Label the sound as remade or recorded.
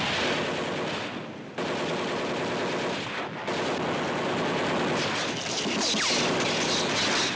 recorded